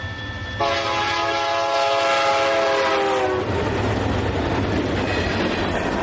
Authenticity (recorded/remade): recorded